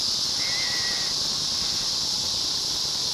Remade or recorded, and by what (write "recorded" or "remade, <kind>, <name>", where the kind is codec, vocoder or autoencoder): recorded